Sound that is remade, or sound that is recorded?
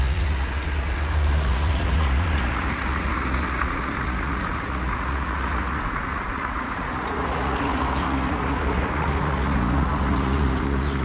remade